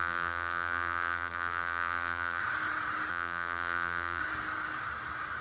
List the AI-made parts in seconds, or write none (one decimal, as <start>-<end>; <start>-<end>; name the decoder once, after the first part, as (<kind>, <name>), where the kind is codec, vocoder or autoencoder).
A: 0.0-2.4 (vocoder, BigVGAN v2); 3.1-4.2